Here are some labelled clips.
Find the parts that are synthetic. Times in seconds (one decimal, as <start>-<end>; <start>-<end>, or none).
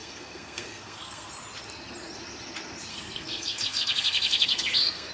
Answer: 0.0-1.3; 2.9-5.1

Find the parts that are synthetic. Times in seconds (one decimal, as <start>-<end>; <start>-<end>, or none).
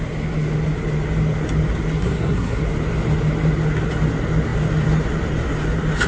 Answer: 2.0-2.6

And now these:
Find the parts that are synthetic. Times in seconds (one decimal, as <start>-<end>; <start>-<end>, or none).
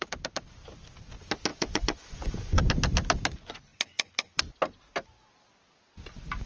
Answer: 1.5-2.6; 3.7-4.4